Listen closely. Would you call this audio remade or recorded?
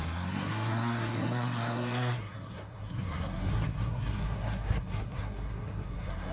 remade